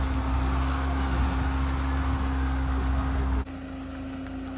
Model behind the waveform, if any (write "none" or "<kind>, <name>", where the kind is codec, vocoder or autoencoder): none